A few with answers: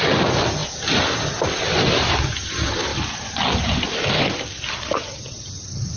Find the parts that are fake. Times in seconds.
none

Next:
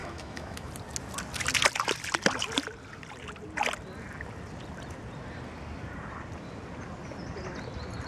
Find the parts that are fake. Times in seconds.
0.0-0.7